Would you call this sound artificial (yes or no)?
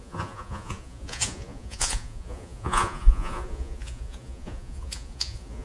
yes